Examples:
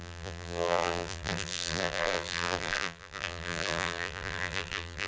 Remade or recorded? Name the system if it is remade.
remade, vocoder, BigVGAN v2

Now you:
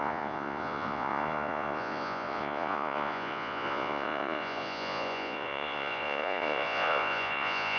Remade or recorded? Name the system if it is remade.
remade, vocoder, Vocos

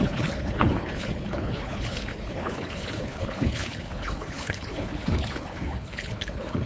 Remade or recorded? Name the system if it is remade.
remade, codec, HILCodec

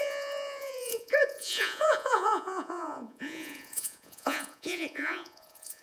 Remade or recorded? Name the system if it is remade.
remade, vocoder, Vocos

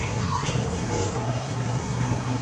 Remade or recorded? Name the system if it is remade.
remade, codec, SNAC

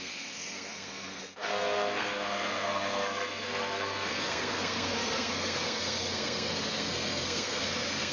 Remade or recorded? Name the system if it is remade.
remade, codec, SNAC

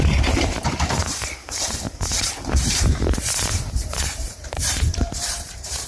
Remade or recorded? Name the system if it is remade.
remade, vocoder, BigVGAN v2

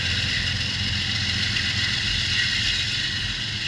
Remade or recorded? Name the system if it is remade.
recorded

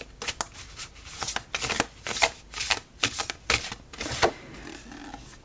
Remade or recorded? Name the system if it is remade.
recorded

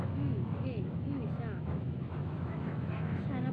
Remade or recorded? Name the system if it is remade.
remade, autoencoder, DAC-VAE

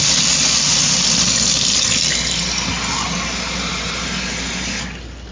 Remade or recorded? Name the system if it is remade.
recorded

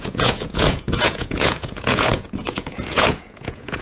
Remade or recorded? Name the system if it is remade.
remade, vocoder, Vocos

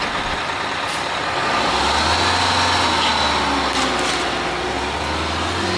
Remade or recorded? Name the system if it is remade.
recorded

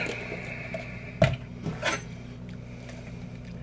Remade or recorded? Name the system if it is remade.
recorded